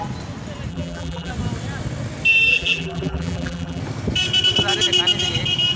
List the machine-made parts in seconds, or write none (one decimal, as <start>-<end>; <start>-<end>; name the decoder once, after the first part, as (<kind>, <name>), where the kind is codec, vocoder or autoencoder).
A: 0.7-1.3 (vocoder, BigVGAN v2); 2.5-3.8